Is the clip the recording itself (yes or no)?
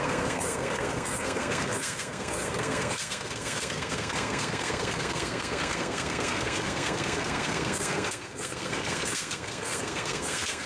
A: no